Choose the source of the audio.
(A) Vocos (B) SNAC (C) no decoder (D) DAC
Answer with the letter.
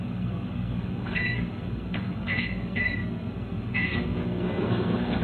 B